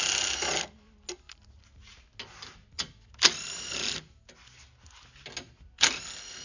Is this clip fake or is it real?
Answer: real